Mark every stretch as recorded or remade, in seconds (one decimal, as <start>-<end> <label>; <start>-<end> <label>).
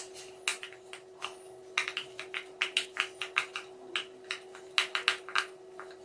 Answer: 0.0-6.0 recorded